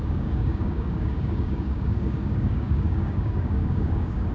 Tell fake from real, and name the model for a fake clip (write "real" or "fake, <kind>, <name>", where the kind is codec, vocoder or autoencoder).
fake, codec, DAC